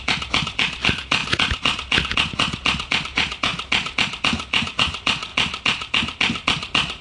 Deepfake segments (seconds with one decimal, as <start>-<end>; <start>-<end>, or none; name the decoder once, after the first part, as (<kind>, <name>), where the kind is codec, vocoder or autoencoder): 0.0-3.5 (vocoder, BigVGAN v2); 4.2-5.3